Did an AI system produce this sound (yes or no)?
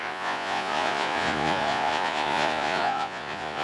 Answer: yes